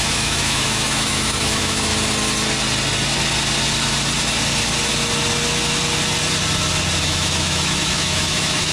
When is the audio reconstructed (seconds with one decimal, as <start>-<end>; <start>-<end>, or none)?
0.0-1.9; 7.0-8.7